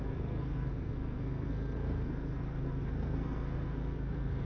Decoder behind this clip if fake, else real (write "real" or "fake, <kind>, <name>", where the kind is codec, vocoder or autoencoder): fake, codec, SNAC